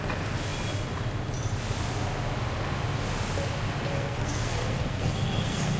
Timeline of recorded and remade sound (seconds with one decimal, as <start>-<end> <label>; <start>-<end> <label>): 0.0-3.9 recorded; 3.9-5.8 remade